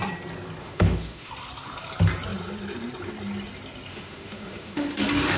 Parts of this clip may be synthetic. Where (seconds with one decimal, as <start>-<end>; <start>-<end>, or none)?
0.6-1.3; 3.9-4.9